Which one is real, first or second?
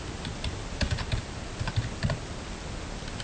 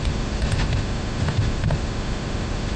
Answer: first